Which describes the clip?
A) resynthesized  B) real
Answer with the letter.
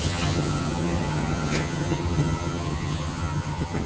A